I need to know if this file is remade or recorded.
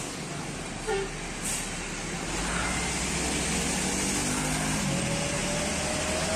recorded